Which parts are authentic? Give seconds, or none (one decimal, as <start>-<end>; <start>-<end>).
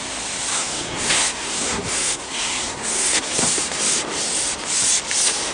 0.0-0.5; 3.8-5.5